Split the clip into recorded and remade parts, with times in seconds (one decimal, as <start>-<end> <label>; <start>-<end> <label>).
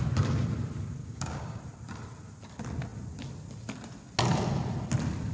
0.0-1.0 recorded; 1.0-1.6 remade; 1.6-5.3 recorded